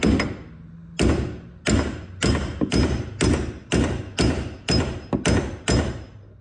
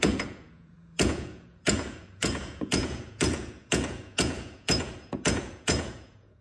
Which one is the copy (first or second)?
second